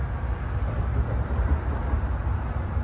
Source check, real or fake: real